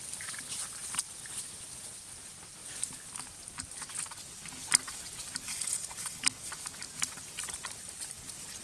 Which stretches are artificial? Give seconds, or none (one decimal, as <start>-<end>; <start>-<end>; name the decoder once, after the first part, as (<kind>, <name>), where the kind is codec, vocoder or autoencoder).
5.5-6.5 (codec, HILCodec)